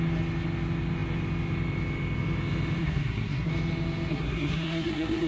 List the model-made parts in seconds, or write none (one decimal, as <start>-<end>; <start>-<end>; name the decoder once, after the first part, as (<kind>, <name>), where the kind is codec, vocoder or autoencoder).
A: 2.8-3.5 (codec, SNAC); 4.1-5.3